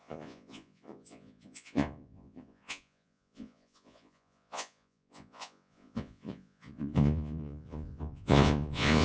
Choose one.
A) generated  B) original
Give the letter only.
A